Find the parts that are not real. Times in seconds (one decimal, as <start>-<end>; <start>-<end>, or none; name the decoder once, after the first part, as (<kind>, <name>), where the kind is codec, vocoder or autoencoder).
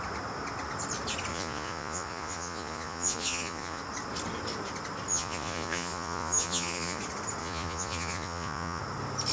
1.3-3.8 (vocoder, Vocos); 5.1-7.0; 7.4-8.8